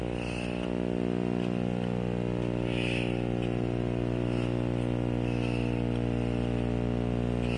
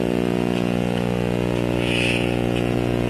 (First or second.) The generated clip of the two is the second